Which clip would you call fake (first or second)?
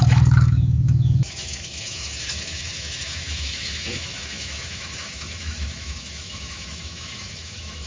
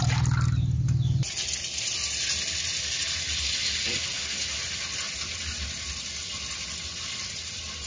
first